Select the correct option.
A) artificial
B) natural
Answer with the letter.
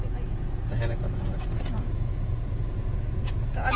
A